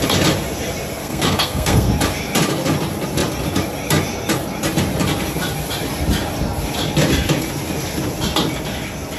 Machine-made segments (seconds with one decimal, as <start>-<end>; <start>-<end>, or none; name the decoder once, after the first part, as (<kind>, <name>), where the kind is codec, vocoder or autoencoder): 1.0-1.9 (codec, SNAC)